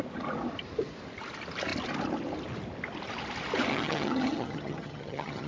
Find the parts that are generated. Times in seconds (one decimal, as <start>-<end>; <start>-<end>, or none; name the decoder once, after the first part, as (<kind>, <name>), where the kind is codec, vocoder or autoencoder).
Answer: 3.7-5.5 (vocoder, HiFi-GAN)